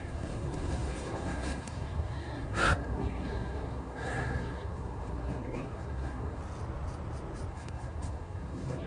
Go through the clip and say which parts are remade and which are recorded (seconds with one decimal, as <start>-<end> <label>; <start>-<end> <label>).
0.0-6.4 remade; 6.4-7.5 recorded; 7.5-8.9 remade